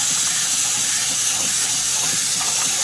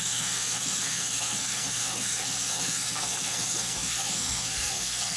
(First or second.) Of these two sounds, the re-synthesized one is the second